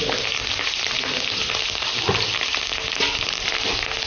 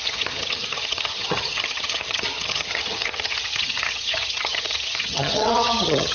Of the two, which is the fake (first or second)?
second